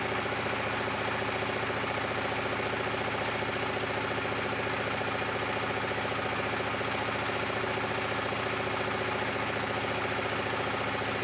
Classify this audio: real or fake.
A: real